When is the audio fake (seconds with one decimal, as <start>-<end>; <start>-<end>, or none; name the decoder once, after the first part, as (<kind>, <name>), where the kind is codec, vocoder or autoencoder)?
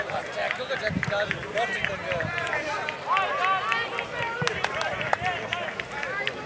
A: none